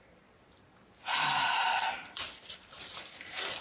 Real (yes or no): no